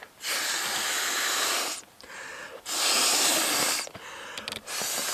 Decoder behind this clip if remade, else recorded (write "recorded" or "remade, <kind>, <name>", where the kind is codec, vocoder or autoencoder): recorded